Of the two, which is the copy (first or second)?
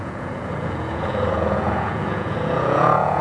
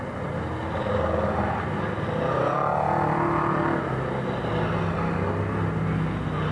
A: first